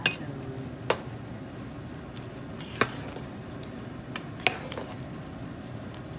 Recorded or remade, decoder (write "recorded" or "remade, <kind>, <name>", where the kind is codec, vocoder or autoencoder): recorded